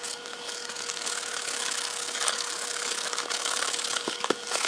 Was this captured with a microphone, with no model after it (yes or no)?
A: no